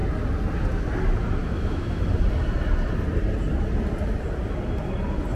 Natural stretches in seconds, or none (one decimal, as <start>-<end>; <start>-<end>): 0.0-1.4; 2.0-5.4